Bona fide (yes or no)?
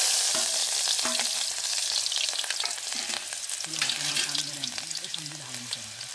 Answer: yes